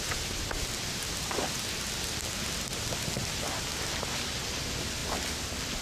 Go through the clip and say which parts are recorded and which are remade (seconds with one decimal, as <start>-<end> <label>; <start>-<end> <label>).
0.0-5.0 recorded; 5.0-5.8 remade

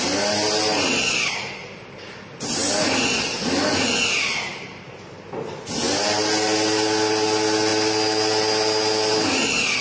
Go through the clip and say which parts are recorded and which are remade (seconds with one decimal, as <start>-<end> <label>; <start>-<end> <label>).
0.0-2.6 remade; 2.6-7.1 recorded; 7.1-9.8 remade